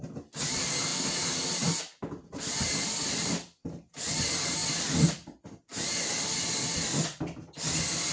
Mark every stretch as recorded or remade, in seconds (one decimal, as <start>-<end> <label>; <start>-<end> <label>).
0.0-8.1 recorded